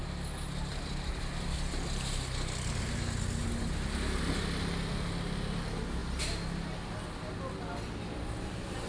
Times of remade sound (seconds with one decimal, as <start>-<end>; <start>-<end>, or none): none

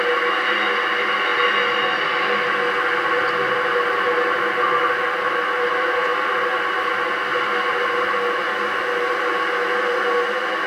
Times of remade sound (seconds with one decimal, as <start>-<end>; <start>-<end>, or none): none

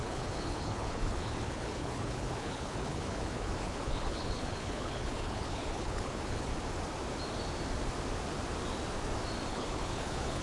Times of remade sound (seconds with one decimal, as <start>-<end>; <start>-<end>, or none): 0.0-6.5; 9.5-10.4

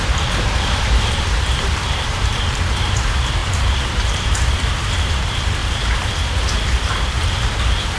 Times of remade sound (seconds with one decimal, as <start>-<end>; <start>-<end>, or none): 0.0-5.6; 6.5-8.0